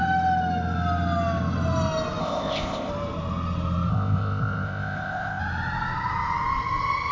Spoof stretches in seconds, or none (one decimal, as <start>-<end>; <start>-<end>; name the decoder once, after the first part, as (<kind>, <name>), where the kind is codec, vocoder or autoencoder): 2.2-2.9 (codec, ZipCodec); 3.9-5.4